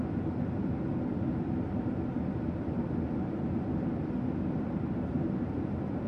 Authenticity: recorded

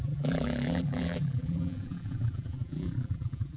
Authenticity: remade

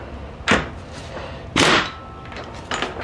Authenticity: recorded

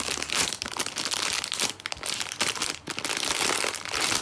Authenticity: recorded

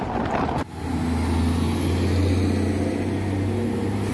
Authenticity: recorded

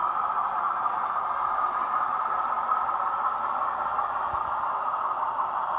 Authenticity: recorded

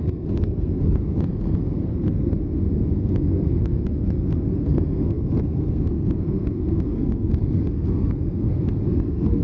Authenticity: remade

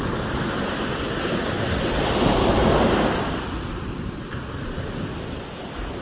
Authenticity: recorded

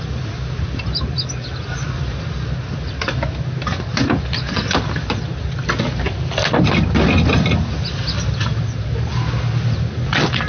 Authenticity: recorded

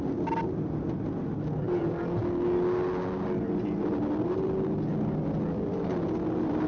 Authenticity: recorded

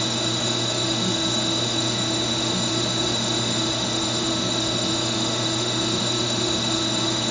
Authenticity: remade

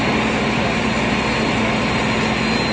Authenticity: recorded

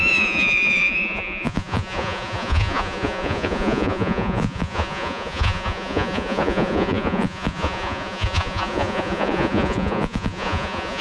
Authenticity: remade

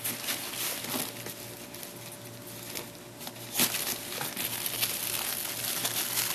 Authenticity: recorded